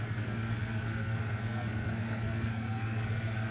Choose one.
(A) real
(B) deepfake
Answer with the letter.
B